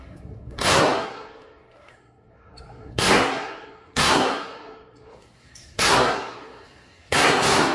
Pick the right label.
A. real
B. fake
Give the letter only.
B